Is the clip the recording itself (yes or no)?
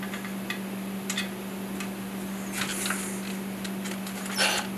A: yes